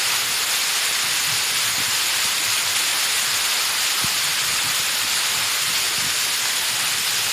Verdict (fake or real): real